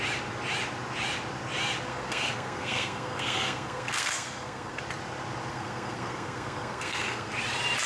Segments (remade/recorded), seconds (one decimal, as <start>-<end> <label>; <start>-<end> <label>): 0.0-1.9 recorded; 1.9-4.8 remade; 4.8-5.5 recorded; 5.5-7.3 remade; 7.3-7.9 recorded